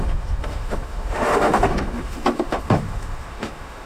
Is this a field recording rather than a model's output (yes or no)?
no